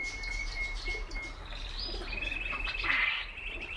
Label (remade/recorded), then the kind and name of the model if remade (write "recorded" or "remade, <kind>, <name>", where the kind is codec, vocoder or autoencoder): recorded